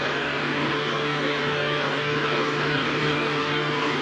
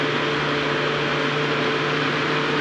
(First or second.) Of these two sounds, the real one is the second